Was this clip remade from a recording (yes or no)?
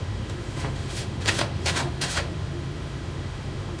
yes